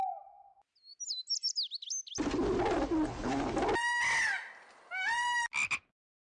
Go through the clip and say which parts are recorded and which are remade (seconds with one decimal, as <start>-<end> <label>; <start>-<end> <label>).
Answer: 0.0-6.3 recorded